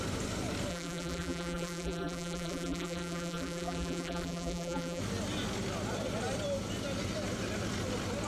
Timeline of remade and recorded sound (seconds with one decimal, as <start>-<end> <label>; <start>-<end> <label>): 0.0-0.7 recorded; 0.7-5.0 remade; 5.0-8.3 recorded